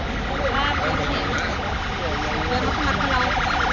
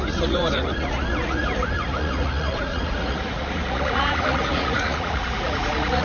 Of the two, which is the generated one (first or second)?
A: second